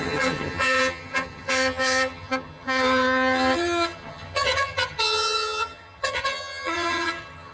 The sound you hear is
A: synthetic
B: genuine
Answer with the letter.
A